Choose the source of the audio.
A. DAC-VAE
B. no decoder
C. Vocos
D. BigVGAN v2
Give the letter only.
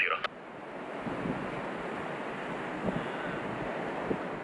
B